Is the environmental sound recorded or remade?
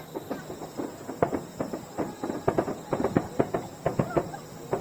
recorded